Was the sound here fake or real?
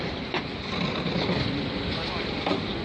real